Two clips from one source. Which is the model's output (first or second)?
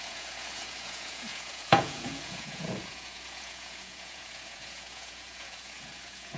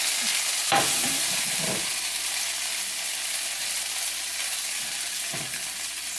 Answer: first